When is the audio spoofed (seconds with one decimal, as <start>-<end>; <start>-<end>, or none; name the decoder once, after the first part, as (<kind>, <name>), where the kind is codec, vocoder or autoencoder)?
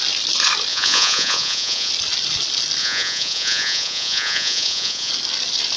0.7-1.9 (vocoder, Vocos); 2.8-5.1